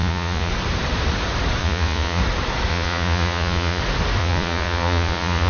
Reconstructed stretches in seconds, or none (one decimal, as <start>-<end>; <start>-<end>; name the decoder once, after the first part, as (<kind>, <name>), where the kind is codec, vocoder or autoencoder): 0.0-0.5 (vocoder, Vocos); 1.6-2.2; 2.7-3.8; 4.2-5.5